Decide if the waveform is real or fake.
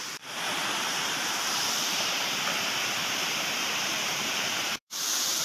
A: fake